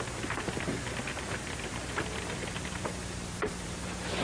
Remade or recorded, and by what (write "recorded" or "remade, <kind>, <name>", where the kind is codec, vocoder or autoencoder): remade, vocoder, BigVGAN v2